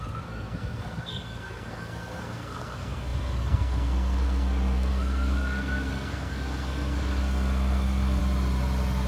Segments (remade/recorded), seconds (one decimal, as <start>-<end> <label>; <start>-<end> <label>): 0.0-8.2 remade; 8.2-9.1 recorded